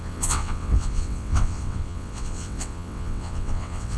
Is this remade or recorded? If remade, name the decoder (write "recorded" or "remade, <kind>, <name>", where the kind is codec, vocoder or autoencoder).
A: remade, vocoder, WaveNeXt